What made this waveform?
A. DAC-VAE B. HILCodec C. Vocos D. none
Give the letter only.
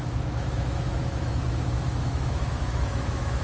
A